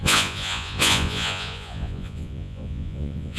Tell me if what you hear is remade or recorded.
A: remade